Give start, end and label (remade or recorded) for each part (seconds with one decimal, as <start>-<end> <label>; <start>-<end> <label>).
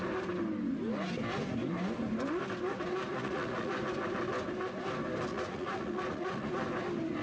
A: 0.0-3.1 recorded; 3.1-3.7 remade; 3.7-5.3 recorded; 5.3-6.5 remade; 6.5-7.2 recorded